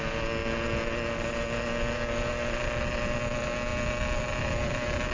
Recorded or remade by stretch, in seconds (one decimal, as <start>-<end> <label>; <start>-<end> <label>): 0.0-5.1 recorded